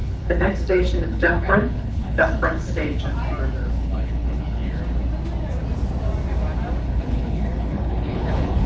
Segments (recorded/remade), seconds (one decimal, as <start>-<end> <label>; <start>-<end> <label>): 0.0-3.0 remade; 3.0-3.6 recorded; 3.6-4.8 remade; 4.8-6.8 recorded; 6.8-8.7 remade